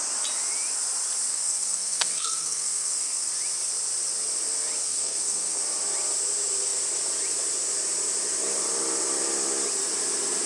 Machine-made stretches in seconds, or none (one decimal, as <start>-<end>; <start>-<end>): 1.3-3.3; 4.8-5.6